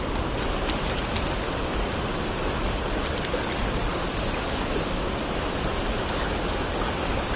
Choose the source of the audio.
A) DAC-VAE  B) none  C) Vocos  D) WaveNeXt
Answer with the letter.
B